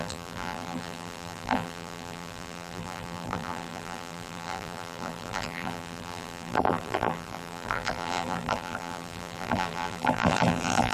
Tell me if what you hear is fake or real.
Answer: fake